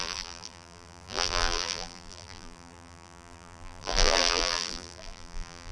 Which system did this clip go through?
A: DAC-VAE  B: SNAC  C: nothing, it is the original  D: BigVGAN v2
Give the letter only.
D